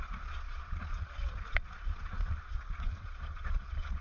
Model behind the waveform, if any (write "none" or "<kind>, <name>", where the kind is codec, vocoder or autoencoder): vocoder, Vocos